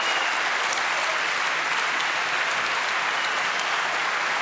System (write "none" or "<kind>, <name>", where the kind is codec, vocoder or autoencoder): none